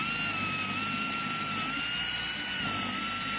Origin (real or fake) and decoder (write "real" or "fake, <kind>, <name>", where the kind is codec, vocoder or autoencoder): real